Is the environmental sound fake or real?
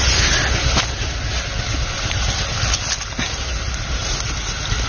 real